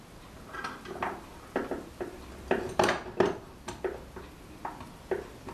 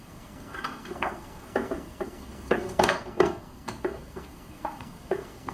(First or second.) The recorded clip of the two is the first